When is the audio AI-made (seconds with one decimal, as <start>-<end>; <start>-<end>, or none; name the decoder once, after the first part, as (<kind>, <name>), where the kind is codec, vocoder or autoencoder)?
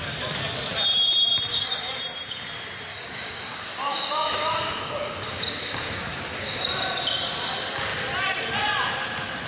1.5-2.0 (codec, DAC); 2.9-6.6